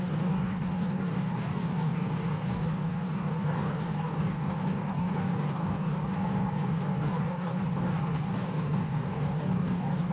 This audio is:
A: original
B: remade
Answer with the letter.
B